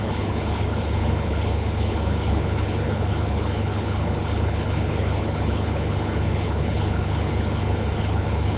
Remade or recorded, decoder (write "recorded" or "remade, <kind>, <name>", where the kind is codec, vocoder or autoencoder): remade, codec, HILCodec